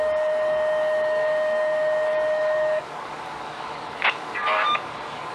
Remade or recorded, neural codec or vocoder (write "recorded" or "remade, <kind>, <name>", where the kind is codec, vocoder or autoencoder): remade, codec, DAC